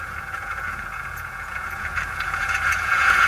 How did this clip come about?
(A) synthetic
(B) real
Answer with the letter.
A